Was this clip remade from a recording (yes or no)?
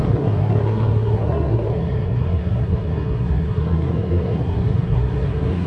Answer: yes